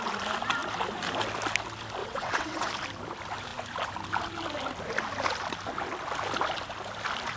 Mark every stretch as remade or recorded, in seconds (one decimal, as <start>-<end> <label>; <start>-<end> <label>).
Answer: 0.0-2.0 recorded; 2.0-2.7 remade; 2.7-7.4 recorded